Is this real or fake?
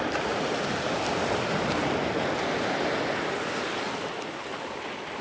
real